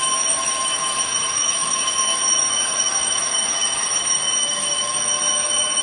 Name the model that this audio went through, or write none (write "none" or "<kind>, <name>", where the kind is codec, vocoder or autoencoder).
autoencoder, DAC-VAE